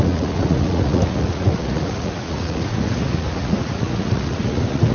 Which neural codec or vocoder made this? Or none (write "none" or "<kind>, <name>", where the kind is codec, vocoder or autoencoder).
vocoder, Vocos